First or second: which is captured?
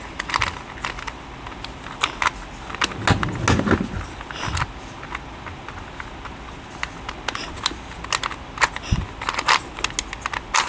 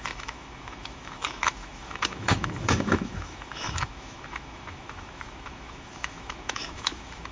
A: first